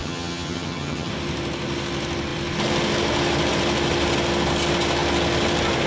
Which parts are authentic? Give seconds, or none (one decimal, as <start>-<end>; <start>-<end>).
1.1-5.9